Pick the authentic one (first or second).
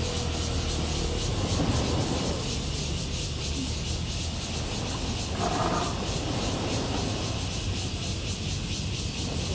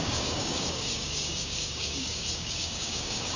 first